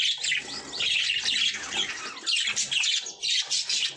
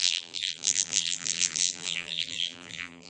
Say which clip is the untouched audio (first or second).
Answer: first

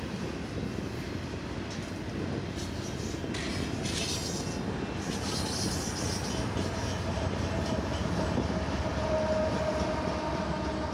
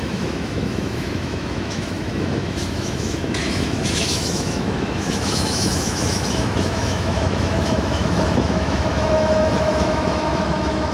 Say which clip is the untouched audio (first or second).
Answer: first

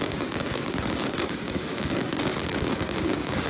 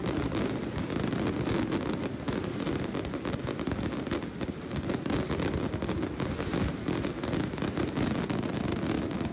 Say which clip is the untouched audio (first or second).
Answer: second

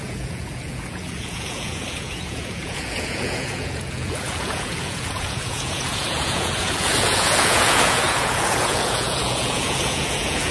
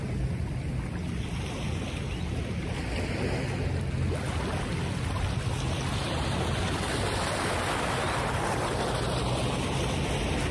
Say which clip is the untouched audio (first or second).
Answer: second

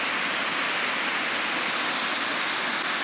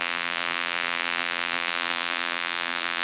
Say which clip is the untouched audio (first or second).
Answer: first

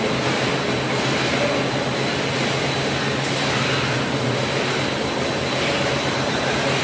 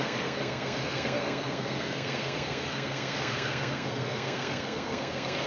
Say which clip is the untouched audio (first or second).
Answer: first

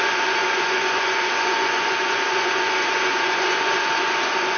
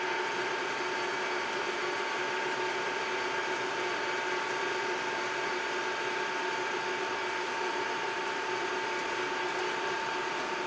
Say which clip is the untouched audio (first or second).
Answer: second